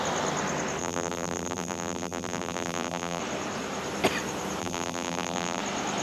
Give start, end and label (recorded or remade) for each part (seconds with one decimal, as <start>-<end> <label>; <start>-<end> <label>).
0.0-0.8 recorded; 0.8-3.2 remade; 3.2-4.6 recorded; 4.6-5.6 remade; 5.6-6.0 recorded